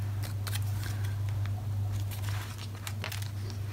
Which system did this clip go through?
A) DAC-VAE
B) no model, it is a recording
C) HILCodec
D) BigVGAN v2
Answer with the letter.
B